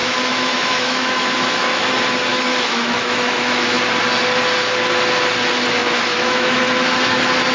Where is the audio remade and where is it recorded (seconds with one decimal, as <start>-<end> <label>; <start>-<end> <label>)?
0.0-1.8 remade; 1.8-2.3 recorded; 2.3-3.8 remade; 3.8-5.8 recorded; 5.8-6.6 remade; 6.6-7.5 recorded